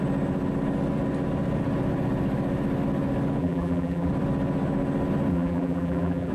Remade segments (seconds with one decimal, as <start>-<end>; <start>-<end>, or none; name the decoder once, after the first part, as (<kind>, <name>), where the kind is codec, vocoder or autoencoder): 3.4-4.1 (vocoder, BigVGAN v2); 5.3-6.3